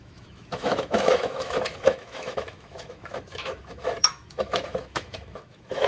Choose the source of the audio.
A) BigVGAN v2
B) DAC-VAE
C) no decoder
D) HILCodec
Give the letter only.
B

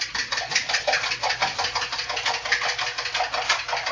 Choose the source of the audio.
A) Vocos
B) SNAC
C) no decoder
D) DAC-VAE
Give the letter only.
C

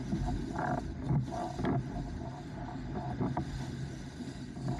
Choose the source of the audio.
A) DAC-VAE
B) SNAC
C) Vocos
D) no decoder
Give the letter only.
D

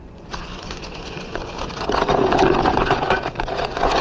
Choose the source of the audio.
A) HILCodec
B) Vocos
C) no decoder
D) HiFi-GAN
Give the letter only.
B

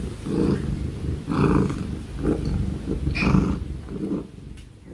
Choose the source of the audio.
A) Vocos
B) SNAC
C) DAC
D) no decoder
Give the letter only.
D